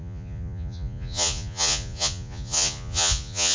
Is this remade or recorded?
remade